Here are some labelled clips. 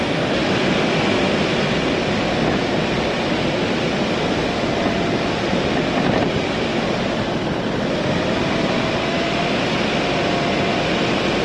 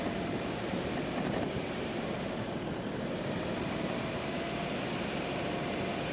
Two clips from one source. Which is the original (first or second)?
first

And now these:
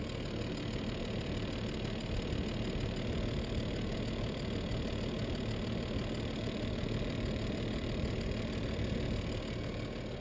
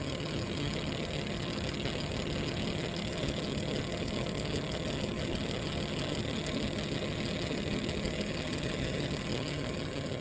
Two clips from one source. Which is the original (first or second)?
first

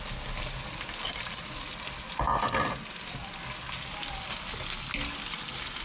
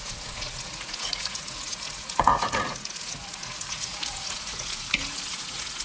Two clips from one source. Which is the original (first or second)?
first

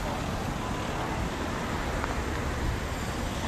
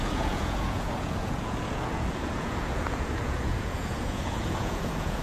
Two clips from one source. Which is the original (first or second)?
first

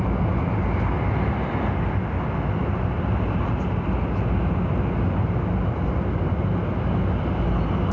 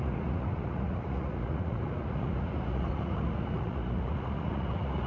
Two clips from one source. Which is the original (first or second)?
first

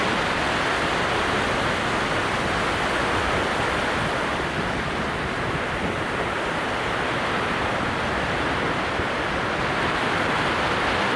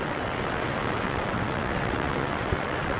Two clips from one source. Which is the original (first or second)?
first